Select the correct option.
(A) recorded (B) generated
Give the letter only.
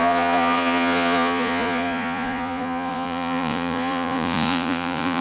B